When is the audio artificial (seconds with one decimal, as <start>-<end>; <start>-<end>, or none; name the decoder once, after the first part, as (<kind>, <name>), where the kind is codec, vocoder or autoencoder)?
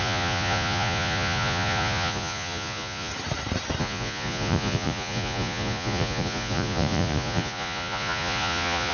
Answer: 0.0-3.1 (vocoder, Vocos); 3.8-8.9